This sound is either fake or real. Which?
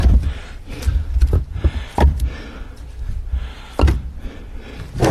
real